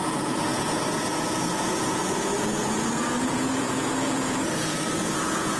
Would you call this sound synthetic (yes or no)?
yes